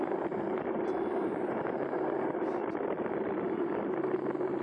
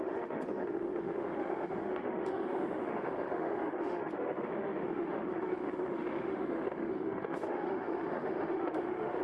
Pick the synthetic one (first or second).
second